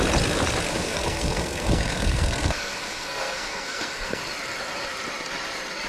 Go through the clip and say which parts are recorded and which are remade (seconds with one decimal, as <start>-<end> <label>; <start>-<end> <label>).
0.0-0.7 recorded; 0.7-4.2 remade; 4.2-5.9 recorded

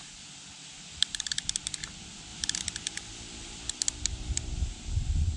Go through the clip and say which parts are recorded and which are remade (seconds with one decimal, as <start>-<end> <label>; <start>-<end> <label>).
0.0-5.4 recorded

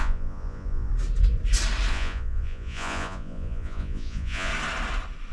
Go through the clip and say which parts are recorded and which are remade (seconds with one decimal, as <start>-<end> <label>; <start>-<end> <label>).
0.0-0.9 remade; 0.9-1.9 recorded; 1.9-4.5 remade; 4.5-5.3 recorded

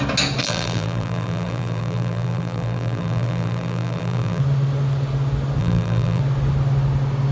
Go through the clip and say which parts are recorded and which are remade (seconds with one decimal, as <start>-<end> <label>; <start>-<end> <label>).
0.0-0.4 recorded; 0.4-4.4 remade; 4.4-5.6 recorded; 5.6-6.2 remade; 6.2-7.3 recorded